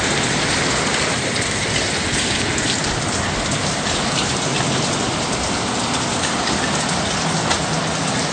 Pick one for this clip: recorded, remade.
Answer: recorded